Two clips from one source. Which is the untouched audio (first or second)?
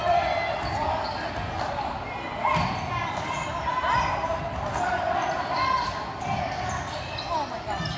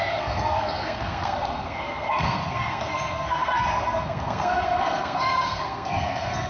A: first